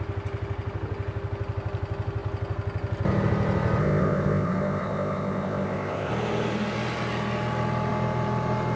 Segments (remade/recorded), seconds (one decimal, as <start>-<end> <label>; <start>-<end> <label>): 0.0-3.8 recorded; 3.8-6.1 remade; 6.1-8.8 recorded